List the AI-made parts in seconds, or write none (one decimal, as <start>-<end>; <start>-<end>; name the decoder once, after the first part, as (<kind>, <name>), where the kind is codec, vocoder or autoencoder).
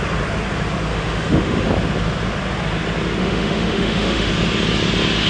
0.9-1.7 (autoencoder, DAC-VAE); 3.2-4.3